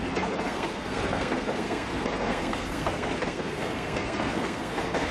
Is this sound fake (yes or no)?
yes